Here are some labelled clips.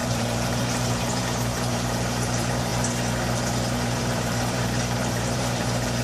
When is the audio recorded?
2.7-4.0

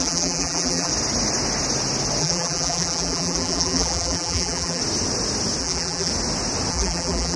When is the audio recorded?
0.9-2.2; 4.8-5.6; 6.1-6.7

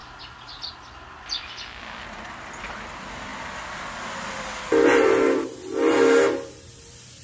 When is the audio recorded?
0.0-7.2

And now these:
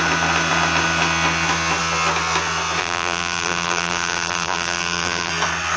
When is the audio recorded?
0.0-2.8; 5.3-5.8

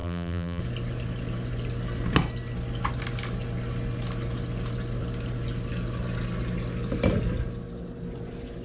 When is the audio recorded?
0.6-8.6